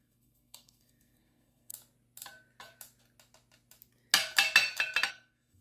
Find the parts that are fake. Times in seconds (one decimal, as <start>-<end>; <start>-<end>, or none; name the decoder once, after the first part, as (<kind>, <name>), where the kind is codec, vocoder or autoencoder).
0.0-1.7 (codec, SNAC); 5.1-5.6